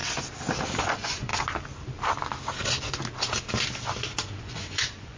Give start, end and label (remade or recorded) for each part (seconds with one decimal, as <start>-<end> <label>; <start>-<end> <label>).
0.0-0.8 recorded; 0.8-1.3 remade; 1.3-4.4 recorded; 4.4-5.2 remade